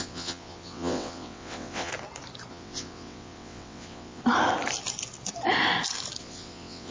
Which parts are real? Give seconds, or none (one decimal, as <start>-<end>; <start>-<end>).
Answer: 1.9-2.5; 4.2-6.2